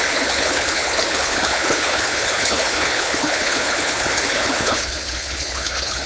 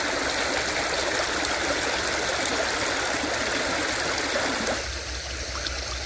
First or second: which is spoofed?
first